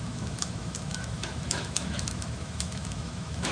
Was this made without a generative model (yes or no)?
no